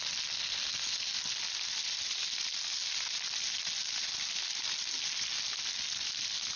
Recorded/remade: recorded